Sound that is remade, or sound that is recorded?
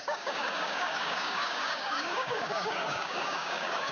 remade